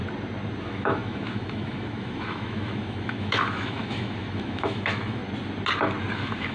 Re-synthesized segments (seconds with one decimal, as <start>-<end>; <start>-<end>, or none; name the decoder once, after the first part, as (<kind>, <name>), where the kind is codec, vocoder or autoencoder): 0.6-5.2 (autoencoder, DAC-VAE); 6.1-6.5